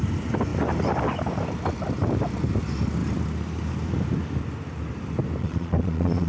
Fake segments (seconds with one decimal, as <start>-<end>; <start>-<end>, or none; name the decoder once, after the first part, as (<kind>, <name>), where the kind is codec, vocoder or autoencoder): 5.4-6.3 (vocoder, Vocos)